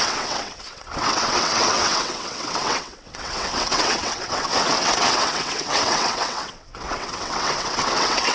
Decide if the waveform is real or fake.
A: fake